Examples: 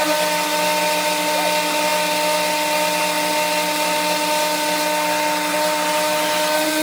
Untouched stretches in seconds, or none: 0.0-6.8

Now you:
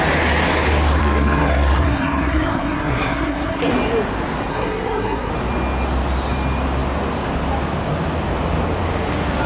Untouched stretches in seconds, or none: 0.0-1.0; 3.7-4.5; 5.3-9.5

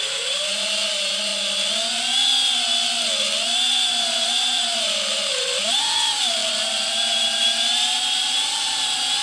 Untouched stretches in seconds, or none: 1.3-4.0; 6.4-6.9

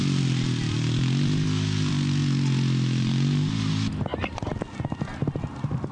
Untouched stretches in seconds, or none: 2.2-3.0

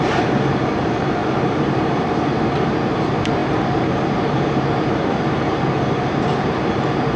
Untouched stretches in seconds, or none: none

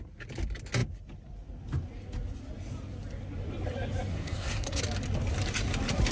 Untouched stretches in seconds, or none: 0.0-4.1; 4.8-6.1

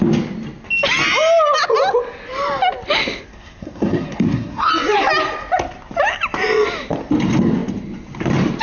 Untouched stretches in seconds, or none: 0.0-3.3; 4.7-8.6